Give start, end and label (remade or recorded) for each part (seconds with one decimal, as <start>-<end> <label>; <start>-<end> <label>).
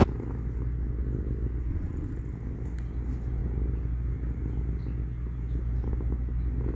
0.0-1.7 recorded; 1.7-2.2 remade; 2.2-6.7 recorded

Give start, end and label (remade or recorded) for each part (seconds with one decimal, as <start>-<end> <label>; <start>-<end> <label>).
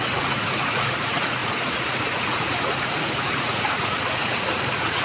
0.0-5.0 remade